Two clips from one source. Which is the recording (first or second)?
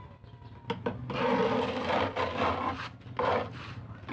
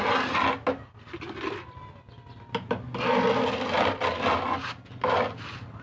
second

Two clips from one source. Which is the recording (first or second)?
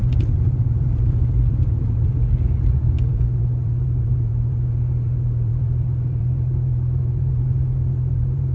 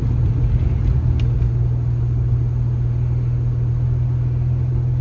second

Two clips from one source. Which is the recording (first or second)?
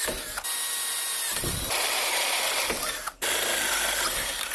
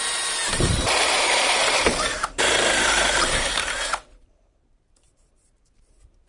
first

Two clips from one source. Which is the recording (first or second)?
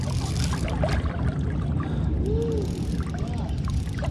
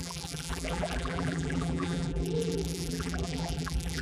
first